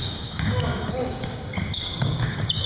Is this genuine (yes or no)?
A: no